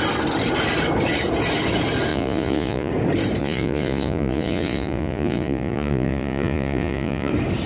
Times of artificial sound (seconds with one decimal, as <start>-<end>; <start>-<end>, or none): 2.1-2.9; 3.4-7.3